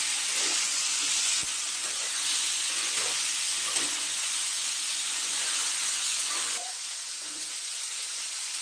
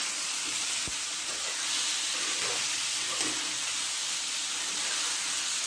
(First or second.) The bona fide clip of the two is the second